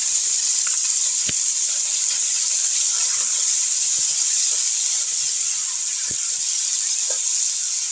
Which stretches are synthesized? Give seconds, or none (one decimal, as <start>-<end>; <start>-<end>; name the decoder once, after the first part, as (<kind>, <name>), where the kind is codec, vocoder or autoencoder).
0.0-2.5 (vocoder, Vocos); 4.5-7.9